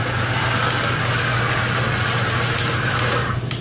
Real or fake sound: real